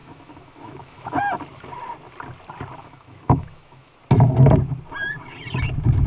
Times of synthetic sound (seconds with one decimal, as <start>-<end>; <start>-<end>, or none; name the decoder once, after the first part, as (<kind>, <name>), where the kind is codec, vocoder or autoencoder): 0.0-1.2 (autoencoder, DAC-VAE); 2.8-3.9